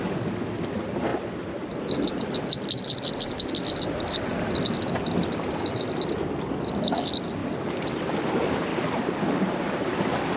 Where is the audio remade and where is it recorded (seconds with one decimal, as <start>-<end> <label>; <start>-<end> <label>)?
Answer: 0.0-7.4 recorded; 7.4-8.1 remade; 8.1-8.7 recorded; 8.7-9.9 remade; 9.9-10.4 recorded

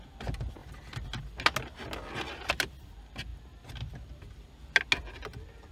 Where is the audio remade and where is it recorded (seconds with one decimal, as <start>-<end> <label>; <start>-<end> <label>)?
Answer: 0.0-5.7 recorded

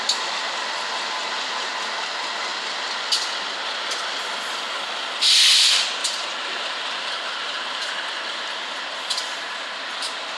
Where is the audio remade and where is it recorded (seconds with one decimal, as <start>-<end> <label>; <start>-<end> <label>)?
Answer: 0.0-1.2 recorded; 1.2-1.7 remade; 1.7-6.0 recorded; 6.0-7.9 remade; 7.9-10.4 recorded

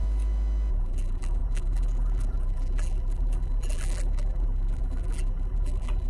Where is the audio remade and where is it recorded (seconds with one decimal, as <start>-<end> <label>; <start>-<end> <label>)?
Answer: 0.0-0.7 recorded; 0.7-6.1 remade

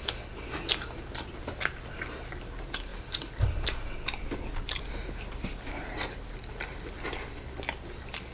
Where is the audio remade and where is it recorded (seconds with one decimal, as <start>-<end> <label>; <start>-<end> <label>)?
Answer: 0.0-2.9 recorded; 2.9-4.8 remade; 4.8-8.3 recorded

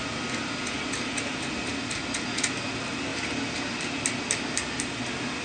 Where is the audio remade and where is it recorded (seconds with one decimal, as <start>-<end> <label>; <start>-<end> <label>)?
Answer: 0.0-1.7 remade; 1.7-2.7 recorded; 2.7-3.1 remade; 3.1-4.8 recorded; 4.8-5.4 remade

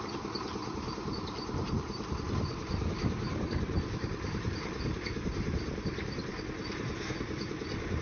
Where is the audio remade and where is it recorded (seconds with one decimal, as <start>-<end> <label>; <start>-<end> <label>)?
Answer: 0.0-0.6 recorded; 0.6-2.1 remade; 2.1-2.5 recorded; 2.5-6.0 remade; 6.0-8.0 recorded

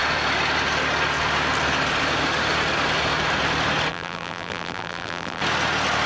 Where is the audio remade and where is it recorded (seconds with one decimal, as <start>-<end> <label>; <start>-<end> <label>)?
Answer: 0.0-3.9 recorded; 3.9-5.4 remade; 5.4-6.1 recorded